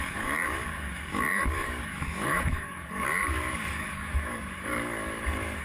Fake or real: fake